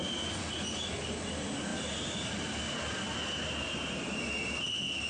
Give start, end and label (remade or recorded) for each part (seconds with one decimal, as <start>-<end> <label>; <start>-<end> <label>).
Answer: 0.0-5.1 recorded